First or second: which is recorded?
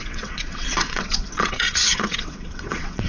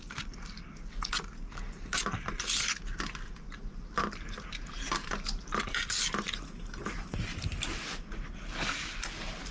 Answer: second